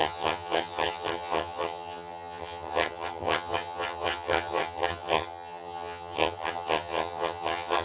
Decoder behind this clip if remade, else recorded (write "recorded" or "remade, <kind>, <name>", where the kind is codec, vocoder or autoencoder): remade, vocoder, HiFi-GAN